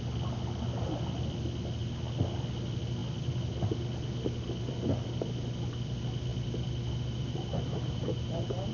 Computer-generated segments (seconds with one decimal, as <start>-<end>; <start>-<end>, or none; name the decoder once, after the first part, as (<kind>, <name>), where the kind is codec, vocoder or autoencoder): none

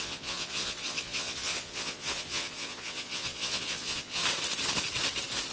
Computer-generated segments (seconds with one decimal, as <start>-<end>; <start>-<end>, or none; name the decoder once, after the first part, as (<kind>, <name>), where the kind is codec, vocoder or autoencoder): 0.0-4.2 (vocoder, Vocos)

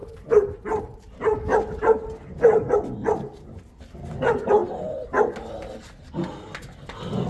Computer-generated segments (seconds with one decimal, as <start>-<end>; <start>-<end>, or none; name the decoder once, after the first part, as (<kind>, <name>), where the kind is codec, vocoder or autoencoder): none

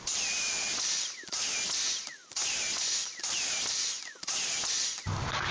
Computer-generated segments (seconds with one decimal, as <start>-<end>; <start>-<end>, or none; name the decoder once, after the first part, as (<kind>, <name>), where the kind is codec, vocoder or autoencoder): 2.2-3.2 (vocoder, BigVGAN v2)

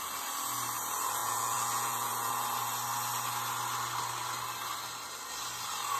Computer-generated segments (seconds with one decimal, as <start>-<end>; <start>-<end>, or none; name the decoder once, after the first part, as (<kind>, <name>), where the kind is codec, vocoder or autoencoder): 1.2-2.3 (vocoder, Vocos)